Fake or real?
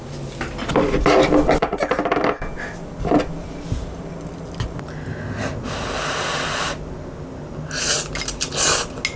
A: real